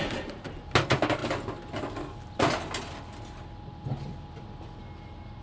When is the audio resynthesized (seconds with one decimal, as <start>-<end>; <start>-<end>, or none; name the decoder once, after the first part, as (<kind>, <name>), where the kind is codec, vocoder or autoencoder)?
none